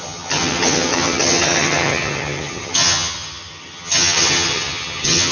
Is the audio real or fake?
fake